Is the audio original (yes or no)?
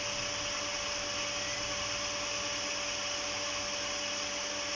yes